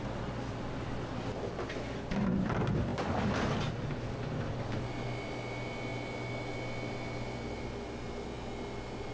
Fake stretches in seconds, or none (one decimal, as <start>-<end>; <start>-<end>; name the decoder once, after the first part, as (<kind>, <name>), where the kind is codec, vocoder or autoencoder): none